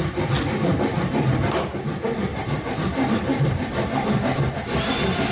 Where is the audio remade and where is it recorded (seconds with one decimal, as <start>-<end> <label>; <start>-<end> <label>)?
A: 0.0-0.9 recorded; 0.9-1.6 remade; 1.6-2.3 recorded; 2.3-4.5 remade; 4.5-5.3 recorded